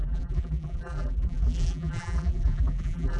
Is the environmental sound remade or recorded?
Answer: remade